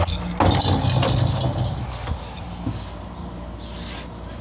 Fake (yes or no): no